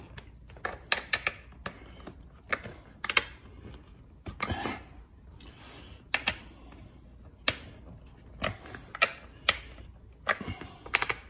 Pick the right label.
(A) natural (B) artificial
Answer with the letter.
A